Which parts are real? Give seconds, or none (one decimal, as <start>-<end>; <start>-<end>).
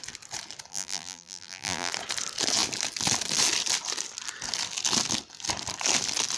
0.0-0.7; 1.9-6.4